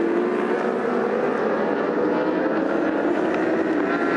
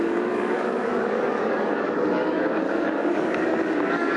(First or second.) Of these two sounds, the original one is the first